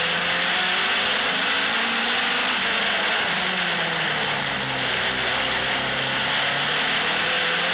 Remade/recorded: recorded